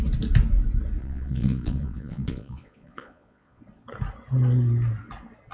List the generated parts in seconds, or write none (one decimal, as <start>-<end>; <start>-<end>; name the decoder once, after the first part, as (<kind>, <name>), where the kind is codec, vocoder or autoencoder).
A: 1.0-3.6 (vocoder, Vocos)